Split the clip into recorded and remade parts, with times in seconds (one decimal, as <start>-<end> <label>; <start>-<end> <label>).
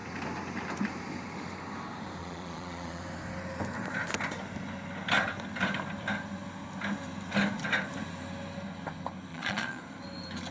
0.0-2.2 recorded; 2.2-3.0 remade; 3.0-9.3 recorded; 9.3-9.8 remade; 9.8-10.5 recorded